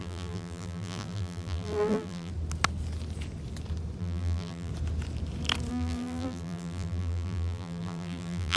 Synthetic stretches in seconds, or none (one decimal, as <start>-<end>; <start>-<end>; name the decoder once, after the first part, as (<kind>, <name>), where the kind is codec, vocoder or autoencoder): 0.0-2.3 (vocoder, BigVGAN v2); 4.0-4.7; 5.7-8.6